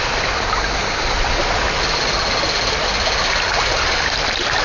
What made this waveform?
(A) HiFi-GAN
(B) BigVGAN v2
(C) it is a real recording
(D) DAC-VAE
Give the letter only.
C